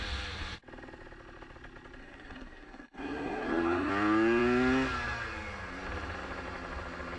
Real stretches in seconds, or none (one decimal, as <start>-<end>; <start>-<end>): 0.0-2.0; 3.9-7.2

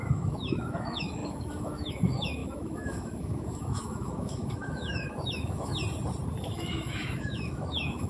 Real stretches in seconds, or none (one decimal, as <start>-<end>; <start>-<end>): 5.7-6.4

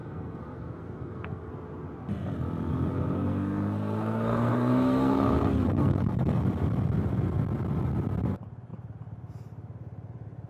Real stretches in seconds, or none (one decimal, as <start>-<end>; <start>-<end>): 1.5-2.7; 6.4-10.5

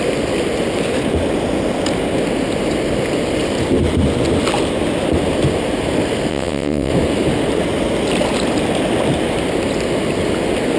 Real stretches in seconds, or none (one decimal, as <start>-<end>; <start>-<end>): 0.0-6.3; 6.9-10.8

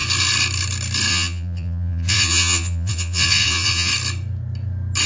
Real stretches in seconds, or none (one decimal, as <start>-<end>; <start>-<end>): 0.0-1.1; 3.9-5.1

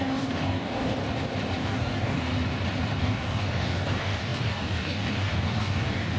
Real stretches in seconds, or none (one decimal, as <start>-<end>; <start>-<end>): 1.0-1.6; 2.3-3.0

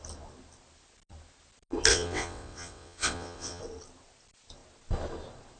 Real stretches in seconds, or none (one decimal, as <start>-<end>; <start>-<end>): 0.0-1.9; 3.6-5.6

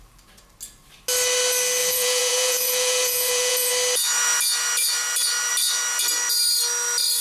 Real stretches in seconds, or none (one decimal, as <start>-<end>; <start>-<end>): 0.0-1.8; 3.7-7.2